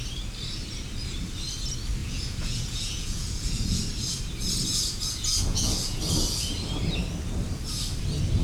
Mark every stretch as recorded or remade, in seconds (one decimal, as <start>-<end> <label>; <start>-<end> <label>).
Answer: 0.0-2.0 recorded; 2.0-3.8 remade; 3.8-4.7 recorded; 4.7-6.0 remade; 6.0-8.4 recorded